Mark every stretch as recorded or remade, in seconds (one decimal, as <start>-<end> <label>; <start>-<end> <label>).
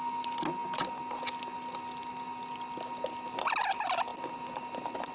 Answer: 0.0-5.1 recorded